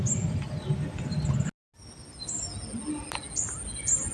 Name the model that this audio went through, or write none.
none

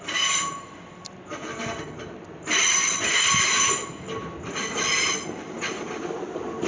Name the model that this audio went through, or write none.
none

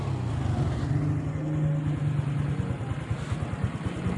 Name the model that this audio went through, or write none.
none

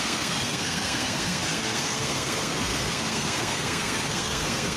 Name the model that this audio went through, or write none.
codec, SNAC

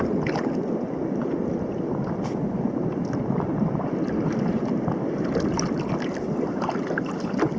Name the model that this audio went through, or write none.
none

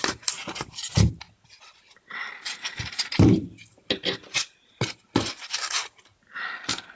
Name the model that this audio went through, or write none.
none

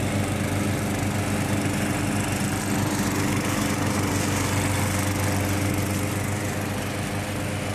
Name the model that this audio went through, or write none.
none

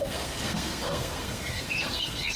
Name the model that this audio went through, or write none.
codec, SNAC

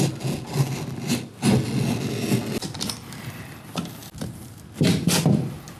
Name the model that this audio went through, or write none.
none